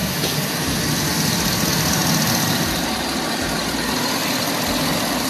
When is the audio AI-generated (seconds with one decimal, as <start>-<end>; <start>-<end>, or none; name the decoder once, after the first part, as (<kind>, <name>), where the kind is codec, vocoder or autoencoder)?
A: none